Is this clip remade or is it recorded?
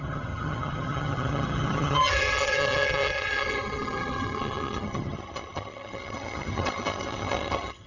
remade